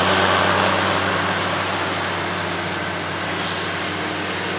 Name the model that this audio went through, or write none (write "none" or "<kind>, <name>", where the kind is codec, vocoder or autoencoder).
none